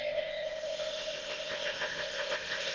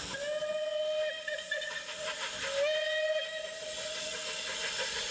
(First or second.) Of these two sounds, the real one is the second